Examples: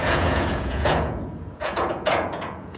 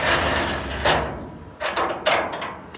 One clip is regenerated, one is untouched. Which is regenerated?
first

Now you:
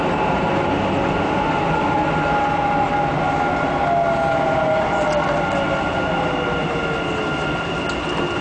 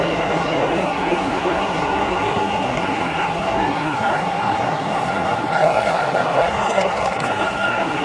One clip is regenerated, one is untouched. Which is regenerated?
second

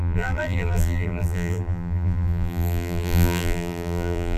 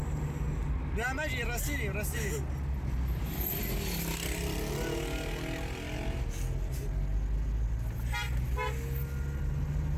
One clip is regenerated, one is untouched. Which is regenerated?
first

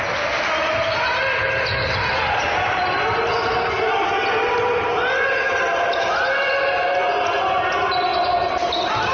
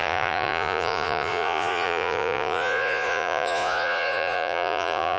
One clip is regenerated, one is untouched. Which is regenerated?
second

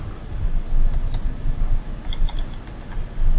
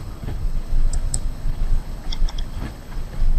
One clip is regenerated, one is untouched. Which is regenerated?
second